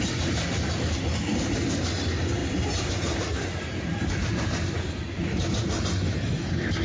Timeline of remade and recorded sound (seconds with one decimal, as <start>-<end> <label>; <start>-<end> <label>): 0.0-2.4 recorded; 2.4-6.8 remade